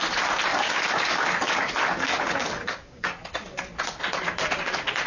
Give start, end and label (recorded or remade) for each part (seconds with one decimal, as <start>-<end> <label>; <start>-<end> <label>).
0.0-0.5 recorded; 0.5-3.6 remade; 3.6-5.1 recorded